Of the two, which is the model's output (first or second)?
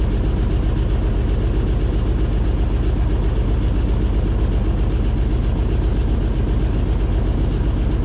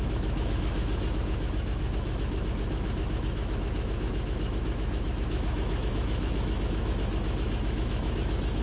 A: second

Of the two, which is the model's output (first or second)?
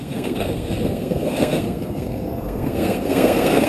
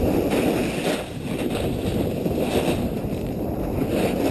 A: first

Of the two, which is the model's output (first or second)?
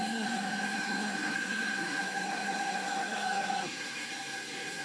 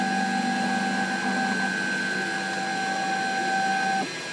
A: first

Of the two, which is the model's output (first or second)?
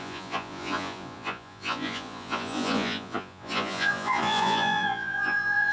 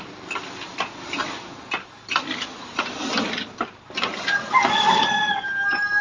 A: first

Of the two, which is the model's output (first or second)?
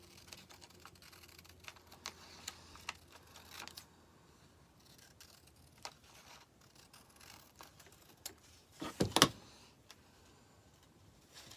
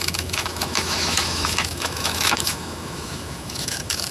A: second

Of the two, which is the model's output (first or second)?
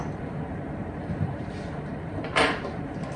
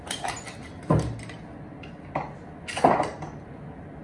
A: first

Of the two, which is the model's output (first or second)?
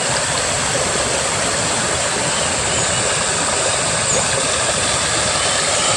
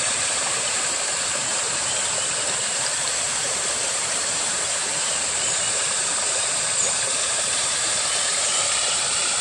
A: second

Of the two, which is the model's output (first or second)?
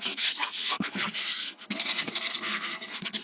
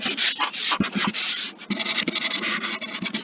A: first